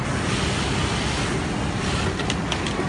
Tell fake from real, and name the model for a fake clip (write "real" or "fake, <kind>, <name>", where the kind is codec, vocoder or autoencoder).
real